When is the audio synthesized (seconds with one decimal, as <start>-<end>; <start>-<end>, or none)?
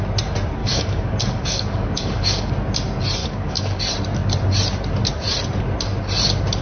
0.6-2.5; 3.2-3.8